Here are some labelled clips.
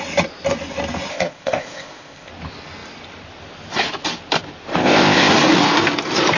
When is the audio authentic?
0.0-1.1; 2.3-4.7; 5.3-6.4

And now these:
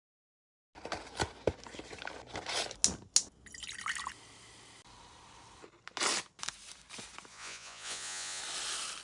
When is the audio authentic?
0.0-7.3; 8.4-9.0

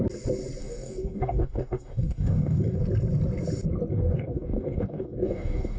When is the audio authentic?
0.0-0.6; 2.8-3.9

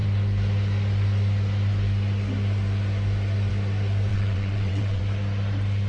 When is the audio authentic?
0.0-4.1; 5.0-5.9